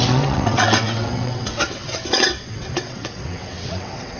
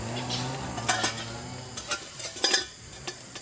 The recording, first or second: second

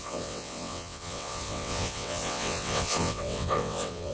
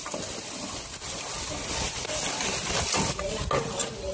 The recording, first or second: second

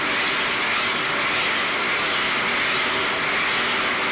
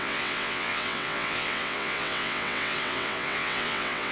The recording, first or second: first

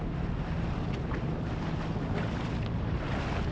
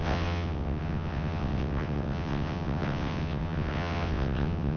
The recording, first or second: first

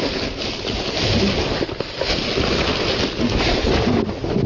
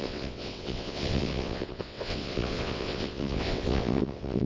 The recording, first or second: first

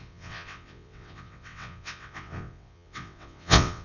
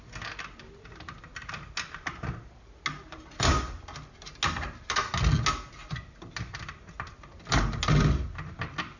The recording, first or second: second